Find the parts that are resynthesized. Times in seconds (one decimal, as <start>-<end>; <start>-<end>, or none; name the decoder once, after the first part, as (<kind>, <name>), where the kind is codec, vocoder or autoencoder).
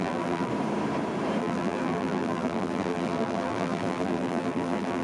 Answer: 0.0-0.5 (vocoder, BigVGAN v2); 1.4-5.0